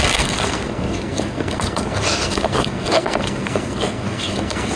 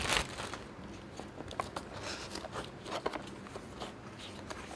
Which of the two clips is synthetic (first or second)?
first